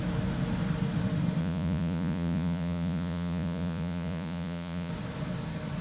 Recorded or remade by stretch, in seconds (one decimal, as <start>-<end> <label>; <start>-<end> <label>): 0.0-1.4 recorded; 1.4-4.9 remade; 4.9-5.8 recorded